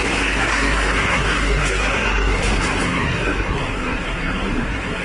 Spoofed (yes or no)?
yes